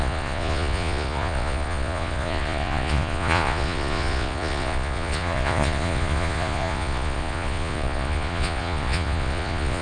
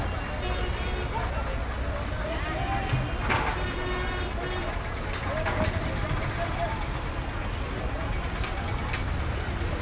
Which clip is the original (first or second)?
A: second